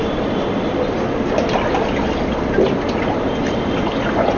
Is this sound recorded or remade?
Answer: recorded